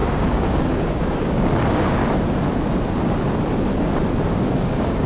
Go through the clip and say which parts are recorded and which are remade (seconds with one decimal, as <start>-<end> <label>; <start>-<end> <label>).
0.0-2.0 remade; 2.0-4.3 recorded; 4.3-5.1 remade